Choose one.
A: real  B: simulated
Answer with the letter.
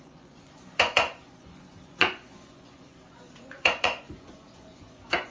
B